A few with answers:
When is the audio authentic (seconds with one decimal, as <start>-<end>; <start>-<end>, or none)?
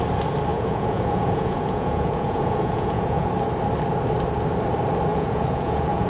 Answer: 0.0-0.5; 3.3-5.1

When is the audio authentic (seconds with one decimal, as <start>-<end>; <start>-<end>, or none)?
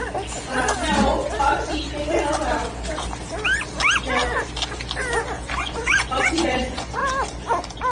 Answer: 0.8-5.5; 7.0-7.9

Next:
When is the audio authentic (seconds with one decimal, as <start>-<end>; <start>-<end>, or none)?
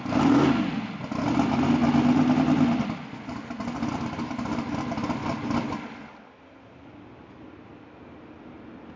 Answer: 0.0-9.0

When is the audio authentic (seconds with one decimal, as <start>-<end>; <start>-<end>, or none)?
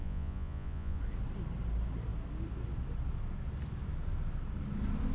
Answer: 1.0-5.1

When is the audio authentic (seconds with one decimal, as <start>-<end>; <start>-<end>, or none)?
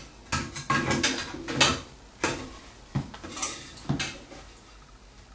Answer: 0.0-5.3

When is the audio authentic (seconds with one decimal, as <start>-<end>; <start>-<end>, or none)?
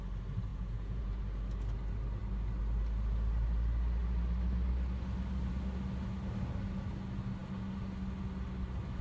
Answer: 0.0-0.5; 1.2-9.0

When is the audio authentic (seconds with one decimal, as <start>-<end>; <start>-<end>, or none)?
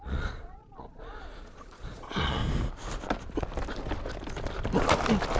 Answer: 2.4-5.4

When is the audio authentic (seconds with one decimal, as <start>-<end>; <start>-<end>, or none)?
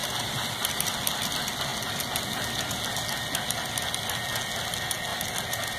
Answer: 0.0-5.8